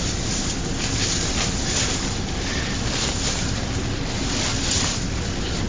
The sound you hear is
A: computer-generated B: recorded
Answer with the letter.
A